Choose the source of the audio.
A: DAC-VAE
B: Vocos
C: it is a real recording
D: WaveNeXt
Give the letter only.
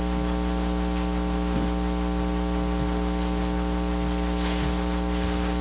C